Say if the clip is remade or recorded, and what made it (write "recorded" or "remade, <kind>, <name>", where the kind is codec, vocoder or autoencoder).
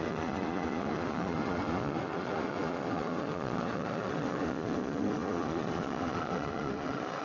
remade, vocoder, Vocos